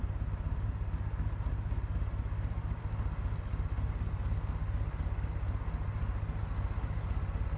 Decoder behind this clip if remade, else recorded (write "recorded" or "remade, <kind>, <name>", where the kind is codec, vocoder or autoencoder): recorded